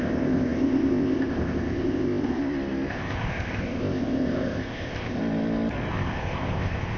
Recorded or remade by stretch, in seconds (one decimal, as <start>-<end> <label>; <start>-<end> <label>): 0.0-2.4 remade; 2.4-2.9 recorded; 2.9-5.2 remade; 5.2-5.9 recorded; 5.9-7.0 remade